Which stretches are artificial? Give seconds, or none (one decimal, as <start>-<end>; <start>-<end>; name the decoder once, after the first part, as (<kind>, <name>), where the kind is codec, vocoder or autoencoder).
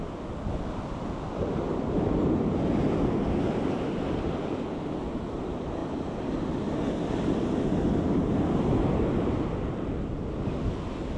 none